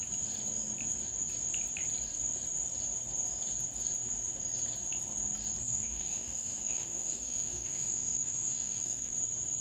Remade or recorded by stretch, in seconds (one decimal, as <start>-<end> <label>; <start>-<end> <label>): 0.0-5.6 recorded; 5.6-9.1 remade; 9.1-9.6 recorded

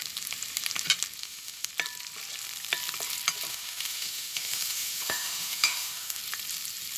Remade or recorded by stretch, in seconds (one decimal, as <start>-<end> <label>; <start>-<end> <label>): 0.0-1.2 recorded; 1.2-1.7 remade; 1.7-3.5 recorded; 3.5-6.2 remade; 6.2-7.0 recorded

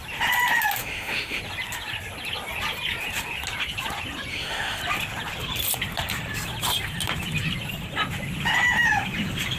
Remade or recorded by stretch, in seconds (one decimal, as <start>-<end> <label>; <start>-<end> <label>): 0.0-0.8 recorded; 0.8-1.4 remade; 1.4-4.3 recorded; 4.3-4.8 remade; 4.8-9.6 recorded

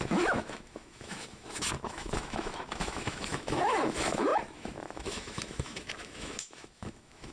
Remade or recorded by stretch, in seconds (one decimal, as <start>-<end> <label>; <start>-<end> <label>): 0.0-7.3 remade